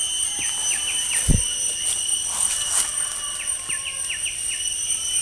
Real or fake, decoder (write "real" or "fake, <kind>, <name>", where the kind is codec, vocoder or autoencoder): fake, vocoder, BigVGAN v2